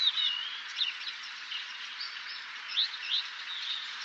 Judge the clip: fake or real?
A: fake